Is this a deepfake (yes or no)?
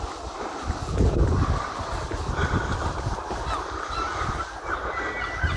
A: no